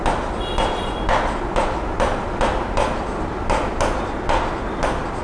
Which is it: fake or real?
real